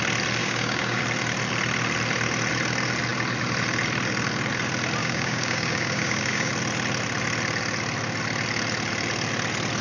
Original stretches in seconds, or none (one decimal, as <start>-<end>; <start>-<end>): 0.0-0.4; 1.0-5.0; 6.5-9.8